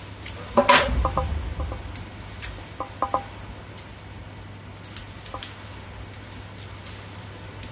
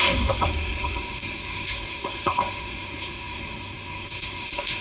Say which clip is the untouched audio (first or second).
first